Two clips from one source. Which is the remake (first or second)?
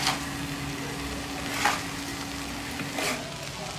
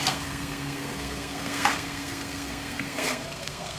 second